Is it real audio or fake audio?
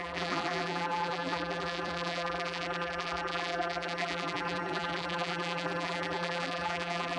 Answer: fake